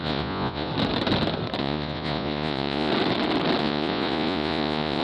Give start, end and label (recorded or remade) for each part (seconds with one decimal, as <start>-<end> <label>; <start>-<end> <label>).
0.0-0.7 remade; 0.7-1.6 recorded; 1.6-2.9 remade; 2.9-3.6 recorded; 3.6-5.0 remade